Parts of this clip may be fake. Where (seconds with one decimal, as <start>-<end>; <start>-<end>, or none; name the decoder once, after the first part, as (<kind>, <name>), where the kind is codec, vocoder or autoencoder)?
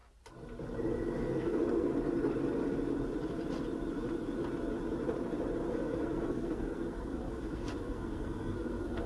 1.2-1.9 (codec, SNAC); 5.7-9.1